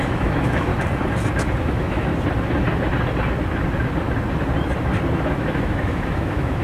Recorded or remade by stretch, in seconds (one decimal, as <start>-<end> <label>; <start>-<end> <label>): 0.0-0.7 remade; 0.7-1.6 recorded; 1.6-2.1 remade; 2.1-5.3 recorded; 5.3-6.6 remade